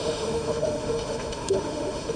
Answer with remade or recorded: remade